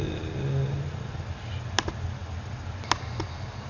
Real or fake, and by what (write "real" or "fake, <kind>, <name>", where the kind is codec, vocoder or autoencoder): real